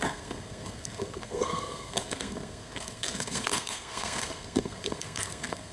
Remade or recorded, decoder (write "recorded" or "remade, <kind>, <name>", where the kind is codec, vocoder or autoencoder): remade, codec, SNAC